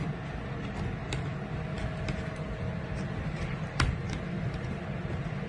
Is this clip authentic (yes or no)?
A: yes